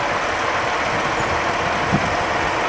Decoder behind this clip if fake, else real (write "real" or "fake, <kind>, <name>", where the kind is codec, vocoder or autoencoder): real